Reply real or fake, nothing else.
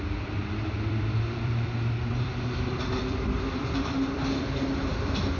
fake